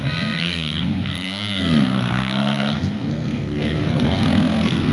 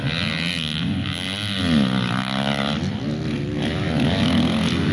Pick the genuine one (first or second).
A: second